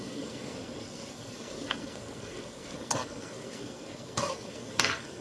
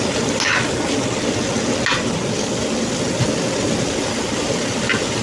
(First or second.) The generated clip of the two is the first